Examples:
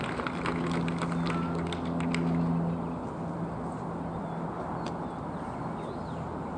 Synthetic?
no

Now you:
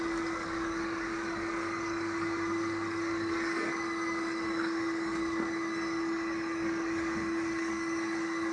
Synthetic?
yes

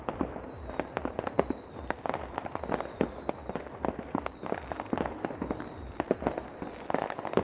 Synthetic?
no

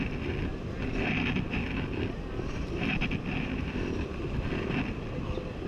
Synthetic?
no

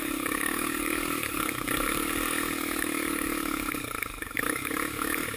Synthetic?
yes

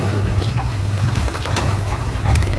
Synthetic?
yes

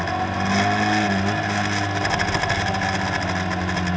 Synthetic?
no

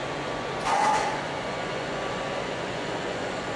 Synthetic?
yes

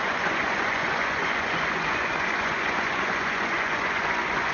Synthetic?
yes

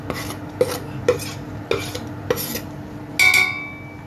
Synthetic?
no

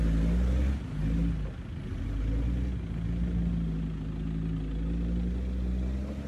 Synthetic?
no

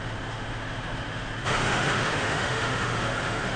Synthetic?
yes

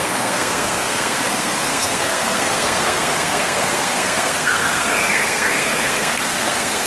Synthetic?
yes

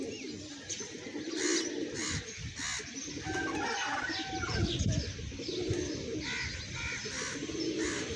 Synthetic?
no